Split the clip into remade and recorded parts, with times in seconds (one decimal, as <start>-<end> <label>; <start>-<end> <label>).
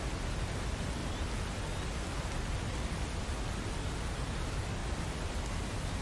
0.0-6.0 recorded